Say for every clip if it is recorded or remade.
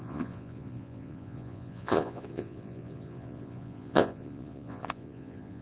remade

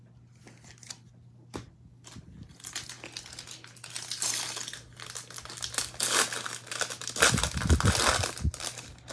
recorded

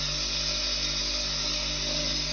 recorded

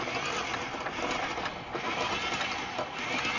recorded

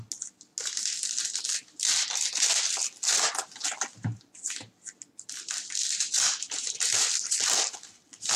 recorded